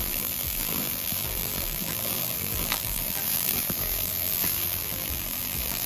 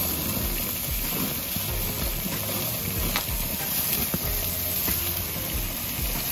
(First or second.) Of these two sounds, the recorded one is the second